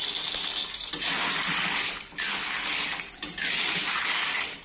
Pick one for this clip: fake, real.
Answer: real